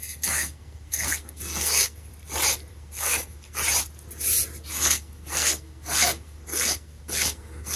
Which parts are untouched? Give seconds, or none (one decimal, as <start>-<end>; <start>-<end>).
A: 2.1-2.7; 3.6-4.7